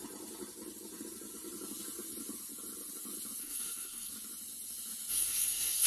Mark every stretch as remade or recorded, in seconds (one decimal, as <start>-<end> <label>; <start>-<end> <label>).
0.0-3.4 recorded; 3.4-4.1 remade; 4.1-5.1 recorded; 5.1-5.9 remade